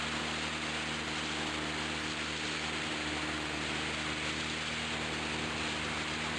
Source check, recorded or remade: remade